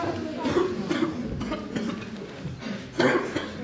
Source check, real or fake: real